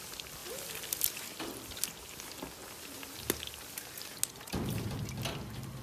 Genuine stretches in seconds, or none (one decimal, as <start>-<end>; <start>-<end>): 0.0-5.8